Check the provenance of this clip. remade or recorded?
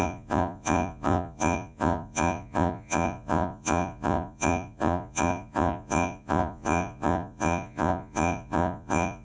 remade